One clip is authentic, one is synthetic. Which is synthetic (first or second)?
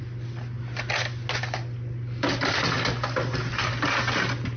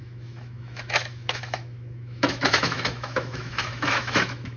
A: second